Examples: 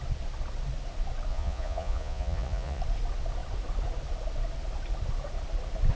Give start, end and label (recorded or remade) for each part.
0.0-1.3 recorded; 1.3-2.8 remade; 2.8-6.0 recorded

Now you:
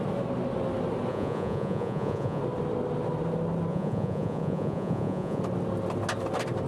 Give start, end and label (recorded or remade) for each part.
0.0-1.1 recorded; 1.1-2.4 remade; 2.4-3.7 recorded; 3.7-5.4 remade; 5.4-6.7 recorded